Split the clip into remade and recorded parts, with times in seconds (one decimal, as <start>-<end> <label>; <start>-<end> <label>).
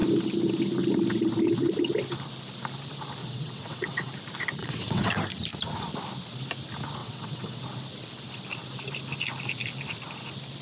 0.0-3.2 recorded; 3.2-4.1 remade; 4.1-4.6 recorded; 4.6-5.1 remade; 5.1-7.0 recorded; 7.0-7.6 remade; 7.6-10.6 recorded